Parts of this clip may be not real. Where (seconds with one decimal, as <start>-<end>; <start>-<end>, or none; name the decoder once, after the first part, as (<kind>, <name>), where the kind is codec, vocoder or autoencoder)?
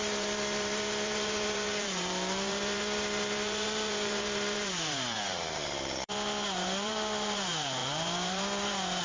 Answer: 0.0-9.0 (vocoder, BigVGAN v2)